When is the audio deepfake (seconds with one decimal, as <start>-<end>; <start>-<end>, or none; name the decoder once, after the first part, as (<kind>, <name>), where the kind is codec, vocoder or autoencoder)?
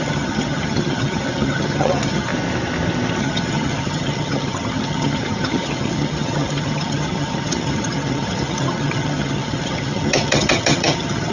0.0-2.3 (vocoder, HiFi-GAN); 3.2-11.3